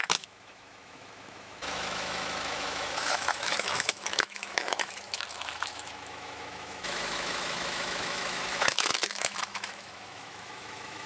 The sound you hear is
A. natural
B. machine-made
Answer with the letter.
B